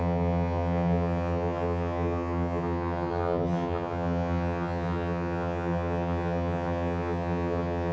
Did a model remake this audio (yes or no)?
yes